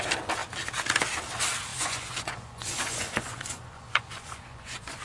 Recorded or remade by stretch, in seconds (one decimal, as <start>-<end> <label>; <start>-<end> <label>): 0.0-1.7 recorded; 1.7-5.0 remade